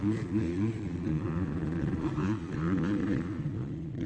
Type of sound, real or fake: fake